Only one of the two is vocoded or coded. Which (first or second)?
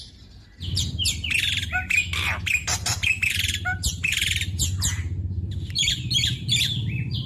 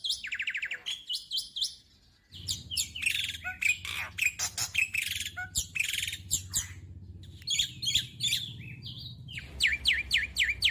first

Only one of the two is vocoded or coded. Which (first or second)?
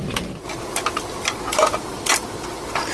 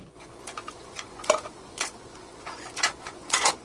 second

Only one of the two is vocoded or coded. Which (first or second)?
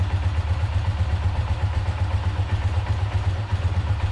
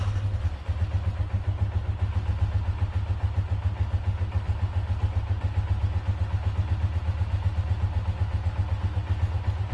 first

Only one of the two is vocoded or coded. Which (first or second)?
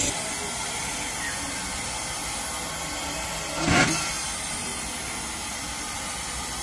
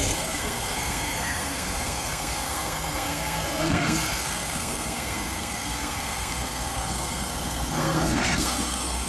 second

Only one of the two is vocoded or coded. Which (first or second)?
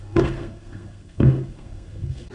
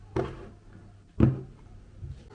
first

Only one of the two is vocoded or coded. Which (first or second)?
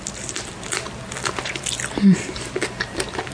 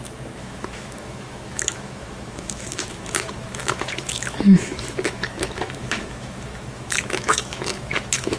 second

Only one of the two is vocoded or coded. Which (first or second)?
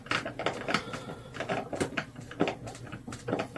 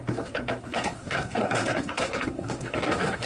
second